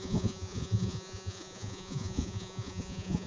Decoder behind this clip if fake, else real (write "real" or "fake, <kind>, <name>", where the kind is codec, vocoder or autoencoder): fake, vocoder, Vocos